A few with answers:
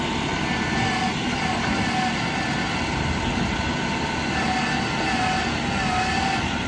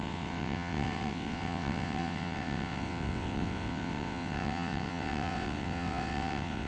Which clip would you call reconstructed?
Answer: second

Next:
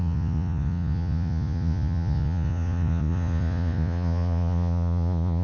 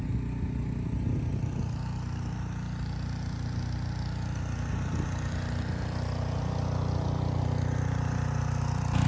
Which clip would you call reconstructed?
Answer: first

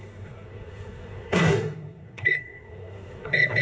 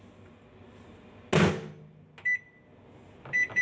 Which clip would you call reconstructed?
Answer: first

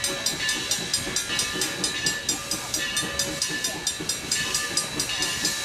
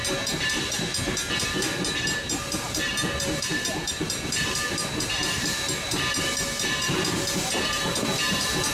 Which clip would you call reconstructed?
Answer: second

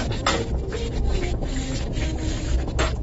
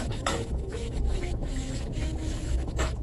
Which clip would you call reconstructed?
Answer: second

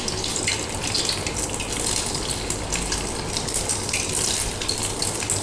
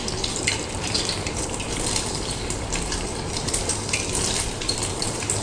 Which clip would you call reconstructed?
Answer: second